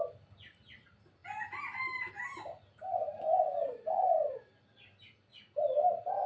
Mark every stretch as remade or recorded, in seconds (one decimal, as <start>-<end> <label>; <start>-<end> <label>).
0.0-6.3 recorded